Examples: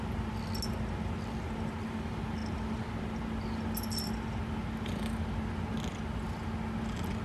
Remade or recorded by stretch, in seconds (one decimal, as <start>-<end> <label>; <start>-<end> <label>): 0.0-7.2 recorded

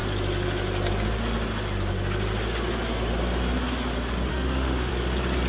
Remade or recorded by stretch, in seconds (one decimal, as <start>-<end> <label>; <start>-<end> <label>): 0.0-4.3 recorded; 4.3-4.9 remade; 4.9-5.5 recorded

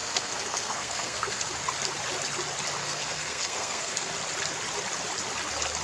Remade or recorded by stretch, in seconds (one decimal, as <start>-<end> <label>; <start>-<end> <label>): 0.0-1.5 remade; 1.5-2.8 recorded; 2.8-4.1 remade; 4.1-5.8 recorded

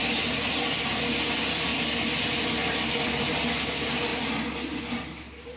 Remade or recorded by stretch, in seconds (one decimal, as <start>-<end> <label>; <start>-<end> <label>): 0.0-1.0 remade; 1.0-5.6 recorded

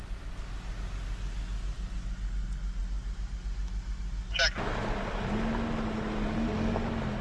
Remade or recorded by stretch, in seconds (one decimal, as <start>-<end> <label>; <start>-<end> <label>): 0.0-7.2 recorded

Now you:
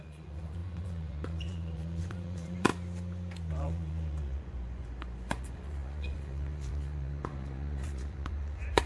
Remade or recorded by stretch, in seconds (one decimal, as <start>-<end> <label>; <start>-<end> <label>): 0.0-2.7 remade; 2.7-3.5 recorded; 3.5-8.9 remade

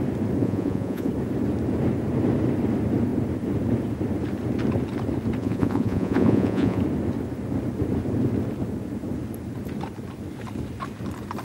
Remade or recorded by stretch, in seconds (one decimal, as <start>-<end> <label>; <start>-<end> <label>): 0.0-0.4 recorded; 0.4-1.1 remade; 1.1-5.4 recorded; 5.4-6.8 remade; 6.8-11.4 recorded

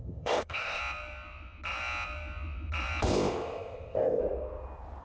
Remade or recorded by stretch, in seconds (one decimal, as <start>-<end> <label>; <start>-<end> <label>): 0.0-0.8 remade; 0.8-3.0 recorded; 3.0-4.2 remade; 4.2-5.0 recorded